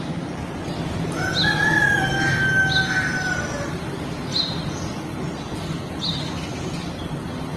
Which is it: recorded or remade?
recorded